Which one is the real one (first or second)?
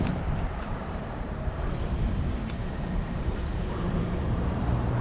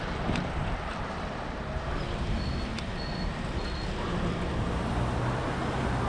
second